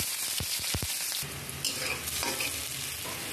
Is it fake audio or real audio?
real